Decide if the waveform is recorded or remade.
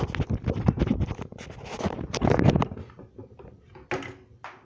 recorded